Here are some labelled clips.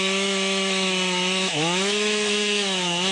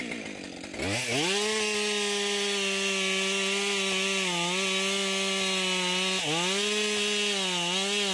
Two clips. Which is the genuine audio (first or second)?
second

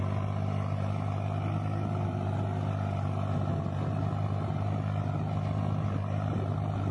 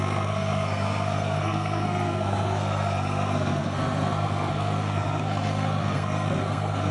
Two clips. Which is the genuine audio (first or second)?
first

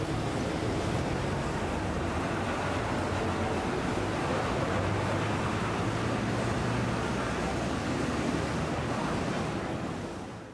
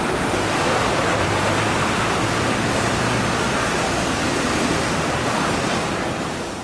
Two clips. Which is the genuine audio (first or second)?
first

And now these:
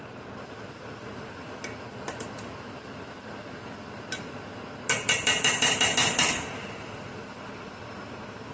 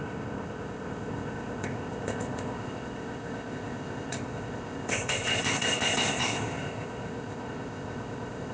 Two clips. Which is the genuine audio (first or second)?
first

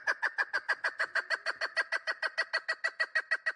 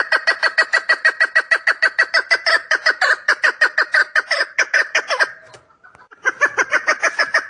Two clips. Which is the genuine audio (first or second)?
first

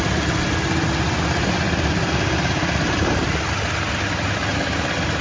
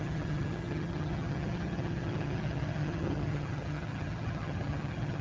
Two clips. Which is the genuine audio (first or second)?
first